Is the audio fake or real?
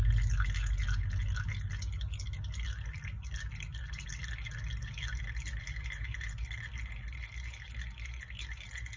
real